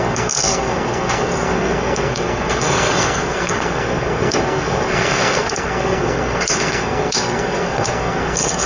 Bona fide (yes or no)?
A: no